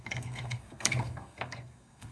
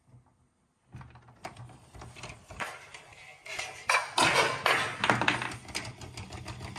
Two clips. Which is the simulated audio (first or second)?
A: first